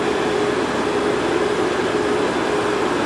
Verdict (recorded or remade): recorded